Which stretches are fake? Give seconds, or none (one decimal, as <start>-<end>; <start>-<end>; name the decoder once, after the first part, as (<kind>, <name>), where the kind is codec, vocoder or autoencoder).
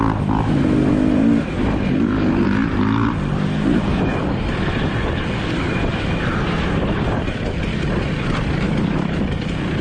none